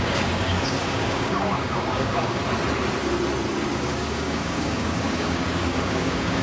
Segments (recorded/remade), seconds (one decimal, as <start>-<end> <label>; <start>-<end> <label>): 0.0-2.4 remade; 2.4-3.7 recorded; 3.7-6.4 remade